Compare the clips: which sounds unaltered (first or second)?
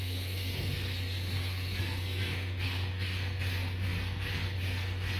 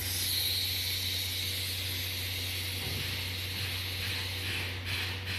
second